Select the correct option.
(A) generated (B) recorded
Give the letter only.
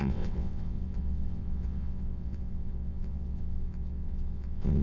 A